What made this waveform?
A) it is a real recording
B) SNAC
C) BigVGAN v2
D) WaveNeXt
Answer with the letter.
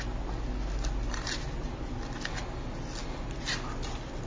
A